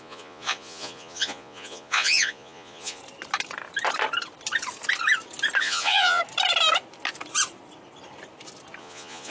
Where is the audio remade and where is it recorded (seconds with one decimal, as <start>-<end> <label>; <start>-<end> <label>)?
0.0-3.0 remade; 3.0-5.6 recorded; 5.6-6.2 remade; 6.2-8.8 recorded; 8.8-9.3 remade